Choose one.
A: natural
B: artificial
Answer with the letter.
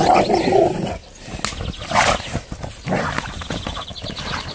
A